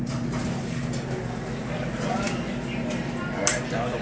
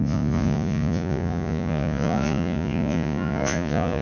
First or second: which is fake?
second